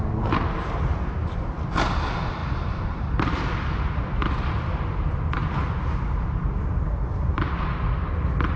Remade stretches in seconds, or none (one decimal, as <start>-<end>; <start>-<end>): none

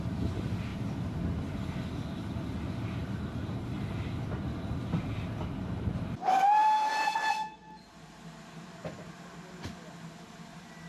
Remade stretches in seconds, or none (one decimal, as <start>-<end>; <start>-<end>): 6.6-8.2; 8.8-9.7